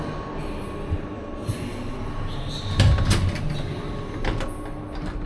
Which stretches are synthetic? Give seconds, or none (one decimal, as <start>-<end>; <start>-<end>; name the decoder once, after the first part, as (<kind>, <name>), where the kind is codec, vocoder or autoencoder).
1.4-1.9 (vocoder, BigVGAN v2)